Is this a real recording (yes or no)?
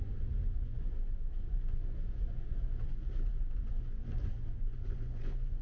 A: no